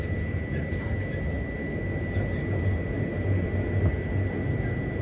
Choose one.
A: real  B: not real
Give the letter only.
A